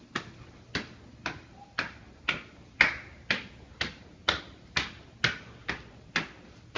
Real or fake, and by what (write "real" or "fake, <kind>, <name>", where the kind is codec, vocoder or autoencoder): real